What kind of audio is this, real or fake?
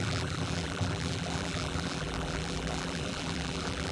fake